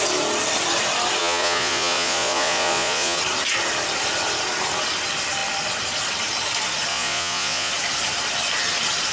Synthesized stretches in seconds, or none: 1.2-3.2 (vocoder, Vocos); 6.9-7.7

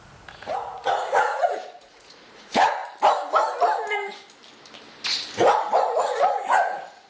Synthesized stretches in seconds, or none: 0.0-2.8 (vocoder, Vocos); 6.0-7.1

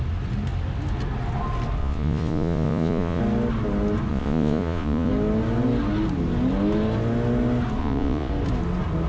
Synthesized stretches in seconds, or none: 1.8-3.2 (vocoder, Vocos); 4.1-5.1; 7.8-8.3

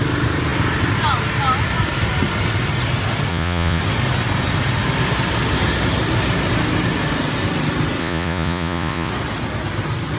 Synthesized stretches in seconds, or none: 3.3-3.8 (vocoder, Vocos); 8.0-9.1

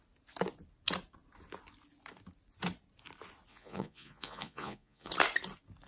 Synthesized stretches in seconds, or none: 3.5-5.1 (vocoder, Vocos)

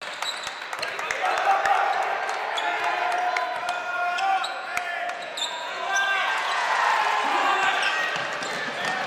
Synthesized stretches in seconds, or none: 4.3-6.8 (vocoder, Vocos)